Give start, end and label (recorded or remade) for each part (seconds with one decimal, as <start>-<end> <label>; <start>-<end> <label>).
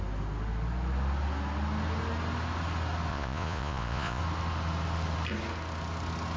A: 0.0-3.1 recorded; 3.1-4.2 remade; 4.2-6.4 recorded